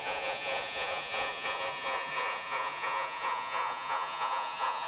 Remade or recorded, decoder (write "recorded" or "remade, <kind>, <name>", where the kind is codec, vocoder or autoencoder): remade, vocoder, Vocos